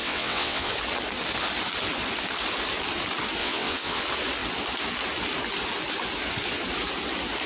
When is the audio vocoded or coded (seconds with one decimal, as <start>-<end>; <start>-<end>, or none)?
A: 0.0-0.7; 3.4-4.0